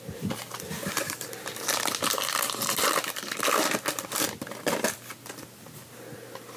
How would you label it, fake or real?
real